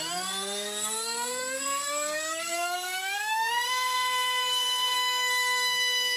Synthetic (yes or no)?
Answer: yes